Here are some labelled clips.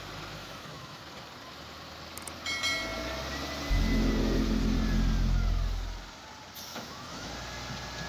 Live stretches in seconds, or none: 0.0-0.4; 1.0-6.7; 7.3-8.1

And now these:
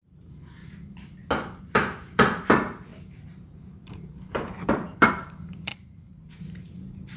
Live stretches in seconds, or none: 0.6-1.6; 5.7-6.4

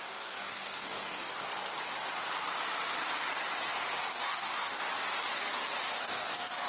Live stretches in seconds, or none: 1.3-4.1; 4.8-6.0

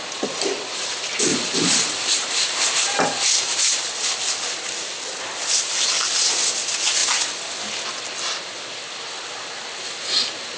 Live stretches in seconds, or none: 0.0-1.3; 3.0-10.6